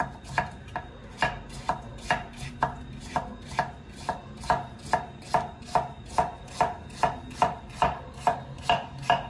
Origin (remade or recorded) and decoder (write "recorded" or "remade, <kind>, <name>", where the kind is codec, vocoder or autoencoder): recorded